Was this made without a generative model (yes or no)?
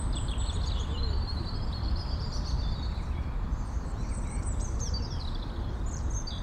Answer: no